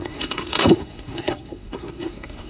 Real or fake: fake